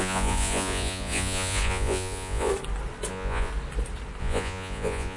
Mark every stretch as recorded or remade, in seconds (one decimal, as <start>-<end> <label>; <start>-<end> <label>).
0.0-2.5 remade; 2.5-3.1 recorded; 3.1-3.5 remade; 3.5-4.2 recorded; 4.2-5.2 remade